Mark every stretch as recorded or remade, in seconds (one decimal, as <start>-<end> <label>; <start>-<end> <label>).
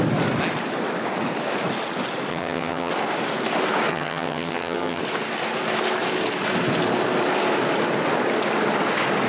0.0-2.3 recorded; 2.3-2.9 remade; 2.9-3.9 recorded; 3.9-5.0 remade; 5.0-9.3 recorded